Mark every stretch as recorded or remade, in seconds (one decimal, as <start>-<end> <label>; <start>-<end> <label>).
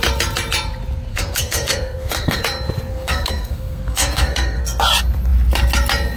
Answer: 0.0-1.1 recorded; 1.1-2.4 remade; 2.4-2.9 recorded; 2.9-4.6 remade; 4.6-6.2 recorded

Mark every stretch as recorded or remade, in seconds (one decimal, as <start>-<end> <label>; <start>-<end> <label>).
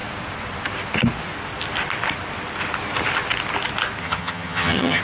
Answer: 0.0-4.0 recorded; 4.0-5.0 remade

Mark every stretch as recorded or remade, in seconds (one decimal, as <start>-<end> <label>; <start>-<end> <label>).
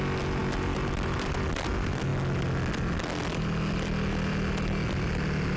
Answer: 0.0-5.6 recorded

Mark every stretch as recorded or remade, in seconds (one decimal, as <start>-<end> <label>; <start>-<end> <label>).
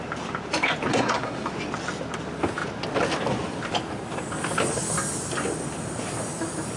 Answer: 0.0-0.9 recorded; 0.9-1.5 remade; 1.5-6.8 recorded